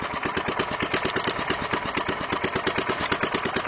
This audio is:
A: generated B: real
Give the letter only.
B